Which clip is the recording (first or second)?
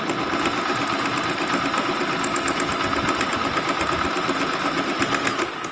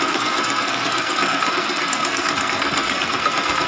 first